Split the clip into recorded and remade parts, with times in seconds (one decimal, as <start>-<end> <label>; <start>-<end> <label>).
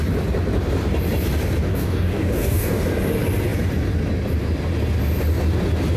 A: 0.0-1.7 recorded; 1.7-2.8 remade; 2.8-6.0 recorded